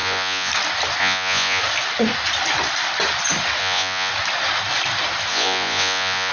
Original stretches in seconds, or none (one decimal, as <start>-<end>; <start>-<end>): 0.5-1.0; 1.6-3.6; 4.1-5.3